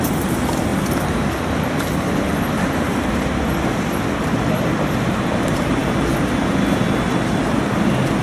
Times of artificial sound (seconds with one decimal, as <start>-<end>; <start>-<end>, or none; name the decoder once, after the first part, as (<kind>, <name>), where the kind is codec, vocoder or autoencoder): none